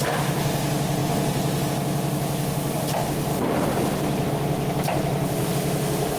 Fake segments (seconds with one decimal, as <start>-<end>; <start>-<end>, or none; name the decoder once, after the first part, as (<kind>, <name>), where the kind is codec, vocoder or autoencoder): 3.3-4.3 (vocoder, BigVGAN v2); 4.9-5.5